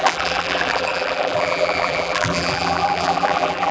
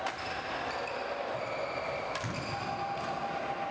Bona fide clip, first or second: second